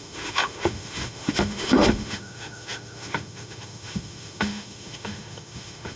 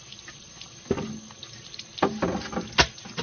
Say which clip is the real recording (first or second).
second